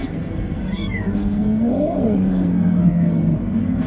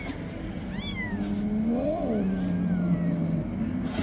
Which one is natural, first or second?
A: second